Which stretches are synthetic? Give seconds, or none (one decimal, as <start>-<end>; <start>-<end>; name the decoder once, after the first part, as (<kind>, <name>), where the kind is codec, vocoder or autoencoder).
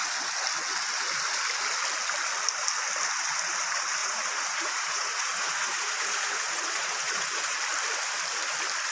4.0-7.6 (vocoder, Vocos)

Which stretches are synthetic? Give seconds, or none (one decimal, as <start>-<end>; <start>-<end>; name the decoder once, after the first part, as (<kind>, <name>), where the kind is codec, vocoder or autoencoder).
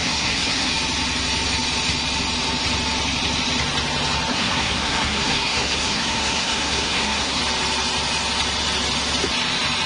0.0-0.7 (codec, SNAC); 4.3-7.4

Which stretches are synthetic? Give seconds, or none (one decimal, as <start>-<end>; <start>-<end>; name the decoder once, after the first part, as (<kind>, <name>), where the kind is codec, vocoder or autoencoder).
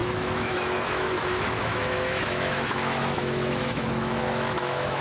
0.0-5.0 (autoencoder, DAC-VAE)